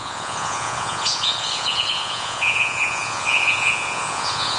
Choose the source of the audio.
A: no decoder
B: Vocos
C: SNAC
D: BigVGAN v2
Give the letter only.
B